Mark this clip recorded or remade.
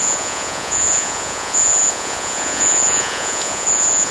remade